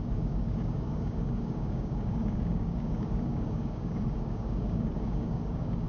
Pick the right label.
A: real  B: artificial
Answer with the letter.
B